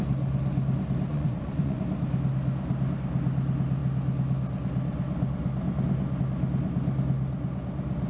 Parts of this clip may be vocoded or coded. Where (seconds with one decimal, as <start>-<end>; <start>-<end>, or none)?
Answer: 1.1-1.8